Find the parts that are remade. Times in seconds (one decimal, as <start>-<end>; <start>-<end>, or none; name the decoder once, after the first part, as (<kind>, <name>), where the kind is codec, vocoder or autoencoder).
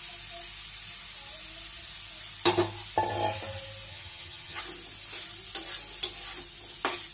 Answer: 3.9-4.6 (vocoder, HiFi-GAN)